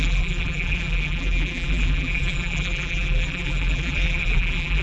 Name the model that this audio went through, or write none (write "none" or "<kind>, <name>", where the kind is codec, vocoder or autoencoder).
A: vocoder, BigVGAN v2